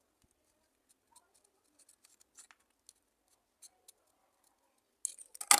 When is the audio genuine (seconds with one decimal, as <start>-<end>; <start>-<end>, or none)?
0.0-5.6